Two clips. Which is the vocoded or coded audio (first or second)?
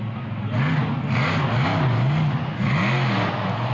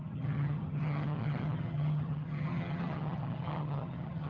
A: second